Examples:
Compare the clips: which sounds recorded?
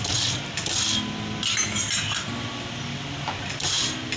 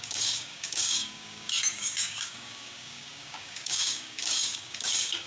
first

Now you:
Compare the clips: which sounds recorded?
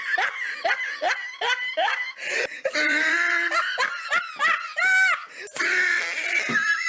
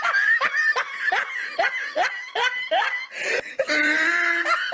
second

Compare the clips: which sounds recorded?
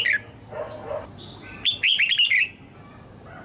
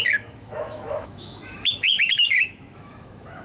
first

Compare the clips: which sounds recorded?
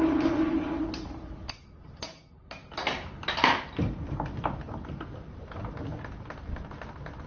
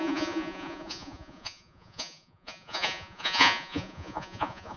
first